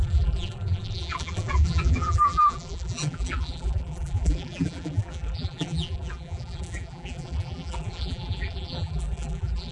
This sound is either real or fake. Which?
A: fake